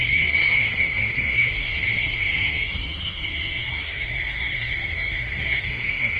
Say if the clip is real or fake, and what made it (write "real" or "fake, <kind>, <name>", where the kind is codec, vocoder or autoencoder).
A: fake, codec, SNAC